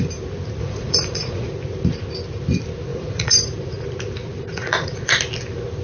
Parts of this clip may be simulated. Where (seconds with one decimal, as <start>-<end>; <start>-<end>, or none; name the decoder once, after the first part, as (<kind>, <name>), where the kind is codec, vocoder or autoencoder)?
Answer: 0.6-1.5 (vocoder, Vocos); 2.9-3.5; 4.5-5.2